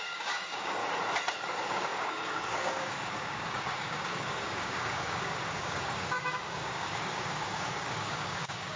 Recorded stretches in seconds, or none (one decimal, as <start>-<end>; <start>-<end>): 0.8-1.3